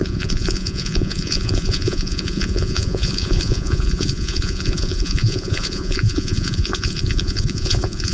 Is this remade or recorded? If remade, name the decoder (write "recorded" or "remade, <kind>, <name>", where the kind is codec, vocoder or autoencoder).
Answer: remade, vocoder, Vocos